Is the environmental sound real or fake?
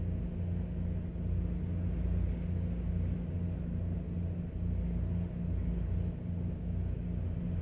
real